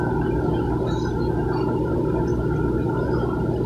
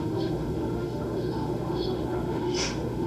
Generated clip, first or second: second